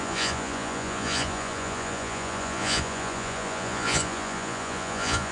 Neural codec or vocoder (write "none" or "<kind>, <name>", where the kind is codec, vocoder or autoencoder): vocoder, Vocos